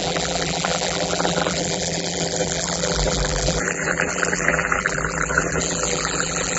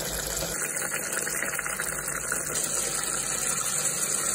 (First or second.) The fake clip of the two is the first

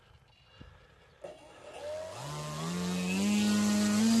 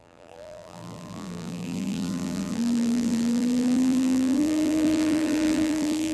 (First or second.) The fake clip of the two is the second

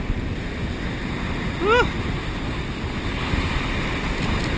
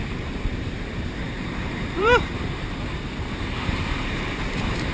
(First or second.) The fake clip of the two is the second